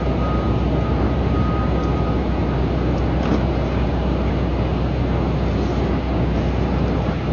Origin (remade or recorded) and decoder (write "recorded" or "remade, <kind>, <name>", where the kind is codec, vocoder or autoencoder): recorded